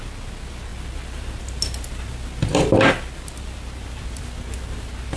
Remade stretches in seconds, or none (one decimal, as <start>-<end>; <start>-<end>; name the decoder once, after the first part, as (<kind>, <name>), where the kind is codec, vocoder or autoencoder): none